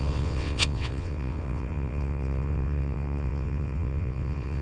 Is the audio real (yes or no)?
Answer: no